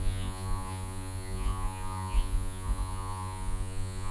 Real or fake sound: fake